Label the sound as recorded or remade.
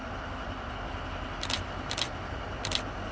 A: recorded